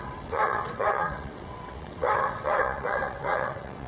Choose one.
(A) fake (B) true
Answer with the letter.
A